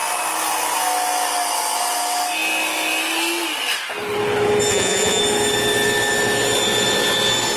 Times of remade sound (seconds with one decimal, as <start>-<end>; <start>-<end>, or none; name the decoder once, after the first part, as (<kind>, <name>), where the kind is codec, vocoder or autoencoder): 4.7-5.2 (vocoder, Vocos)